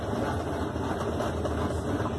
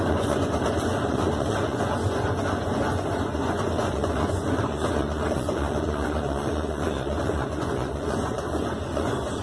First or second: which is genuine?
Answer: first